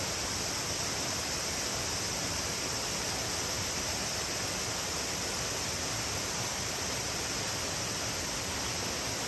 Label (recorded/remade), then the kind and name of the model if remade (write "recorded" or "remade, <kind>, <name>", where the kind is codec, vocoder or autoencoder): recorded